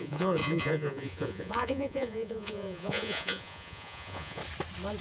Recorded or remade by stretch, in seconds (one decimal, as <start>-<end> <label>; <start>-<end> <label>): 0.0-4.4 remade; 4.4-5.0 recorded